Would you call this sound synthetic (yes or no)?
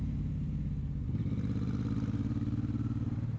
no